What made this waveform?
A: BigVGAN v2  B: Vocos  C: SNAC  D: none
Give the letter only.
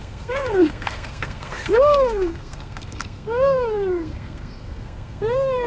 C